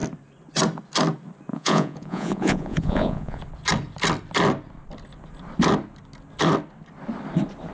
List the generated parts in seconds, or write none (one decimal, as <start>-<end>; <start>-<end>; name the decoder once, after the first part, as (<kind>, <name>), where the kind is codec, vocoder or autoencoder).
1.5-3.4 (vocoder, Vocos)